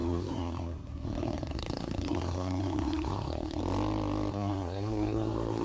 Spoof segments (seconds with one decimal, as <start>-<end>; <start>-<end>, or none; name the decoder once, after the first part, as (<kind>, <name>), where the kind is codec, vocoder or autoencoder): 0.0-3.6 (codec, SNAC); 4.3-5.6